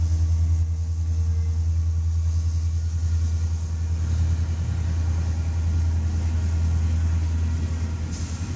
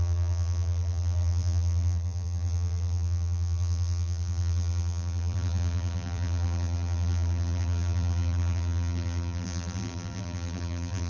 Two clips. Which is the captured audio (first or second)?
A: first